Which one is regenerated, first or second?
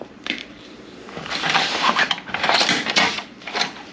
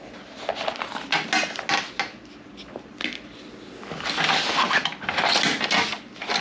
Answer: first